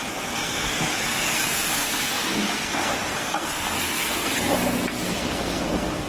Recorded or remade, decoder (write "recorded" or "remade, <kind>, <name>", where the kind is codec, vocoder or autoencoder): remade, codec, SNAC